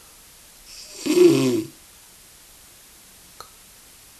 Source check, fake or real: real